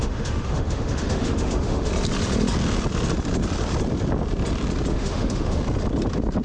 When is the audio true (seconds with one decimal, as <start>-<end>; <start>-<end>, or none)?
1.9-4.9; 5.6-6.4